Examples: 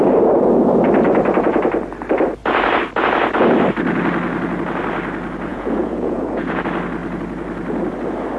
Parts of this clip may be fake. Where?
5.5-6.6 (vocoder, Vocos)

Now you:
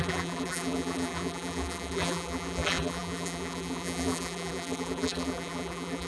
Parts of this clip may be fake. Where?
0.0-6.1 (vocoder, BigVGAN v2)

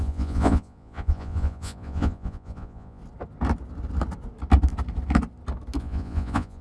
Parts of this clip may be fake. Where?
0.0-3.0 (vocoder, Vocos); 5.8-6.6

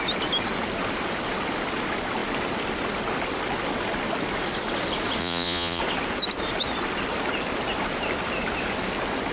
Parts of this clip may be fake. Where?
5.2-5.8 (vocoder, Vocos)

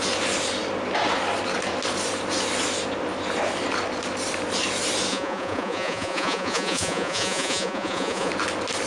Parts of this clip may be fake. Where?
5.1-8.3 (vocoder, Vocos)

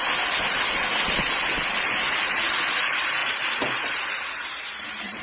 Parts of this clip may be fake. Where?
none